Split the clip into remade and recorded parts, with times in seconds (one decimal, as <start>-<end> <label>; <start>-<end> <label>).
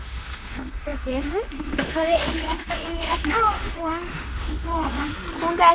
0.0-5.1 remade; 5.1-5.7 recorded